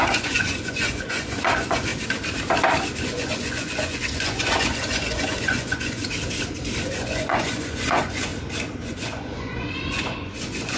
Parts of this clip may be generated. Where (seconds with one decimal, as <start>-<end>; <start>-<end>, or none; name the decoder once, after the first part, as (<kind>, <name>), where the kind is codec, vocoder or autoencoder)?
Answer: 0.0-1.9 (vocoder, Vocos); 3.0-6.0; 6.9-8.3; 8.8-10.8